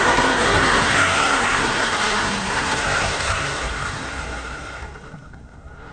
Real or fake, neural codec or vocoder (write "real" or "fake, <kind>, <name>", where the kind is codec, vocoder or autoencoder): fake, codec, SNAC